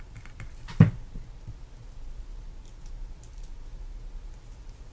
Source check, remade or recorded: recorded